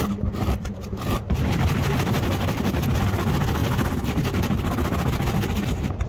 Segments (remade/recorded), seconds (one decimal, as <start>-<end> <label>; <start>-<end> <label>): 0.0-3.6 remade; 3.6-6.1 recorded